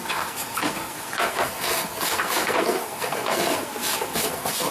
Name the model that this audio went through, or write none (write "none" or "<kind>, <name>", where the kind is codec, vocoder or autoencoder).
codec, SNAC